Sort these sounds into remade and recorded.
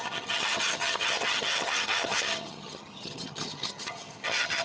remade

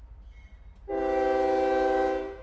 recorded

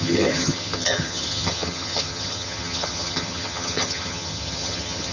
remade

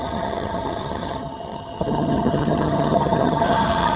remade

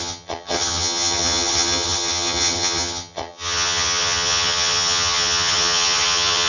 remade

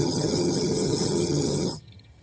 remade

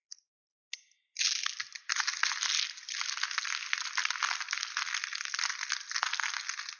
recorded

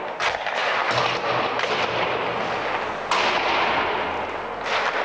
recorded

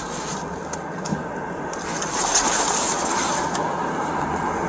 recorded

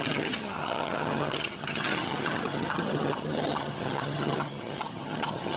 remade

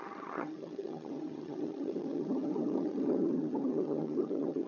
remade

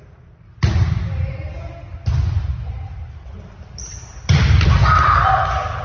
recorded